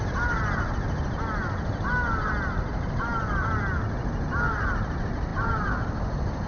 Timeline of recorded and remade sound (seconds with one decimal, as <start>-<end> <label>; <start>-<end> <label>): 0.0-6.5 recorded